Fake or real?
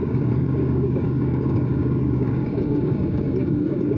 fake